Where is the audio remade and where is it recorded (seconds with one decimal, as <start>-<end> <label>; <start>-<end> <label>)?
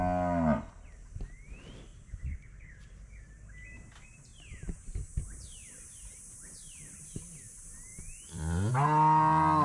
0.0-1.9 recorded; 1.9-2.7 remade; 2.7-4.3 recorded; 4.3-7.0 remade; 7.0-9.6 recorded